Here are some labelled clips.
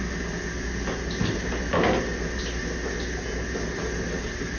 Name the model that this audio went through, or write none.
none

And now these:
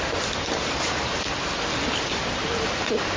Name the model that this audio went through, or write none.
vocoder, BigVGAN v2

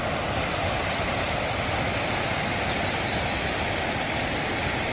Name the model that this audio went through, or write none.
vocoder, BigVGAN v2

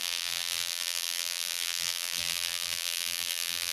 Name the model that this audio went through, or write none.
vocoder, BigVGAN v2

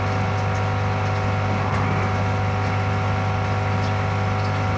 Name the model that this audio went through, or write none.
none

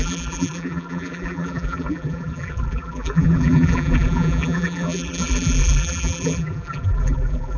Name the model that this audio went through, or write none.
vocoder, BigVGAN v2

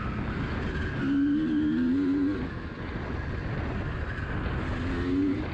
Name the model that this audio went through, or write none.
none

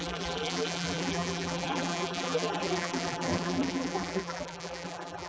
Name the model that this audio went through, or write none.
vocoder, BigVGAN v2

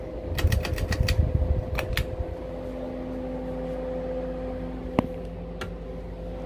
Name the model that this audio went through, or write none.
none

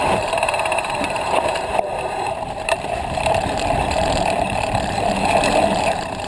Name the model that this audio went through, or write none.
vocoder, BigVGAN v2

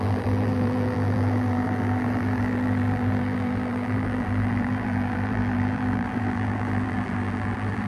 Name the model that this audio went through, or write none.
vocoder, BigVGAN v2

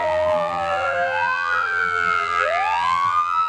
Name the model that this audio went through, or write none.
vocoder, BigVGAN v2